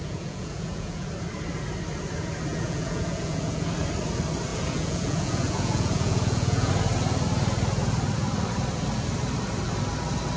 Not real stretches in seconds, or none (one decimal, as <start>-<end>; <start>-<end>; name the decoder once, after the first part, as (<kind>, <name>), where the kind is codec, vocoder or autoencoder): 0.0-1.1 (vocoder, Vocos); 2.5-3.7; 4.5-6.7